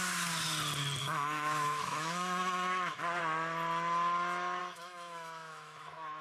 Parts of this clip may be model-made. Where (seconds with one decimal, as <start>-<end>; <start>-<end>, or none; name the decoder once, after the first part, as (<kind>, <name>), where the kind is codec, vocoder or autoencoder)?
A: 1.0-3.2 (autoencoder, DAC-VAE); 4.6-6.2